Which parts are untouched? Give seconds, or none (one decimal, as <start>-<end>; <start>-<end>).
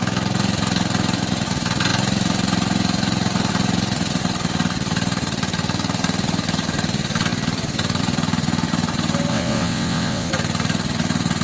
0.0-9.3; 10.3-11.4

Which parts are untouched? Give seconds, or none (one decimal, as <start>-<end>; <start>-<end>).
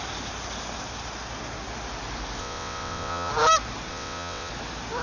0.0-2.4; 3.3-3.9; 4.5-5.0